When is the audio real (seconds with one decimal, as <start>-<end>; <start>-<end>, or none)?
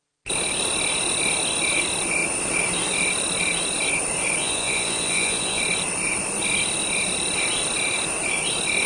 0.0-4.4; 5.6-8.9